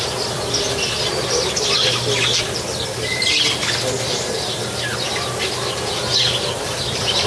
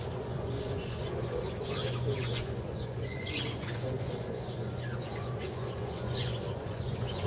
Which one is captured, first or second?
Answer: first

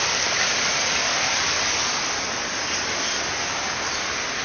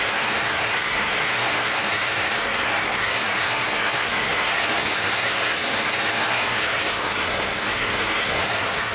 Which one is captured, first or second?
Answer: first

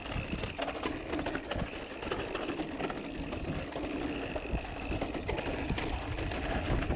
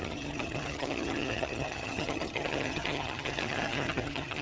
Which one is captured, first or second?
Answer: first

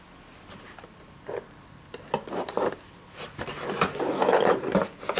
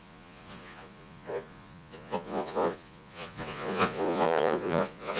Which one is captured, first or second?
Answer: first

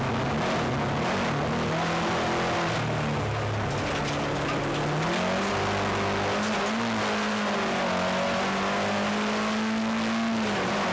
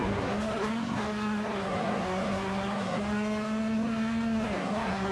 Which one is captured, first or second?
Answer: first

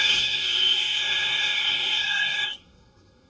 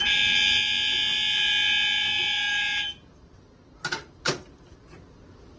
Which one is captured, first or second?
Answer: second